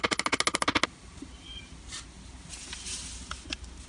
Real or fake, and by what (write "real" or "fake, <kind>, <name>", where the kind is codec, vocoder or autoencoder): real